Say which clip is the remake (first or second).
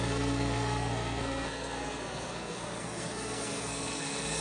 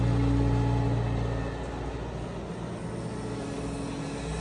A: first